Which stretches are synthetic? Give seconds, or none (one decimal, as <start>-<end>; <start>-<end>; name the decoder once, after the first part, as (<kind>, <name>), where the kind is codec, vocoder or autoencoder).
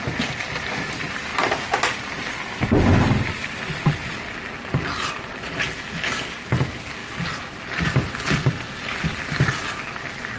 none